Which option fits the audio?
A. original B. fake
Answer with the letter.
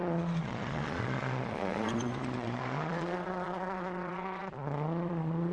B